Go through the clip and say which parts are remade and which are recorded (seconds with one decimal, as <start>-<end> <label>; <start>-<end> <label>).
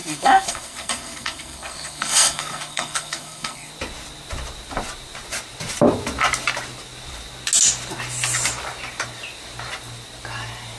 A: 0.0-3.7 remade; 3.7-10.8 recorded